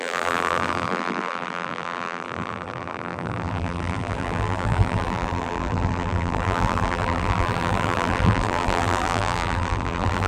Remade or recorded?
remade